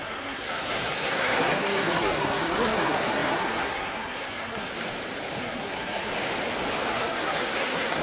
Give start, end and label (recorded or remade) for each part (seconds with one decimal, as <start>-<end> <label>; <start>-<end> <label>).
0.0-4.7 remade; 4.7-5.4 recorded; 5.4-6.1 remade; 6.1-6.9 recorded; 6.9-8.0 remade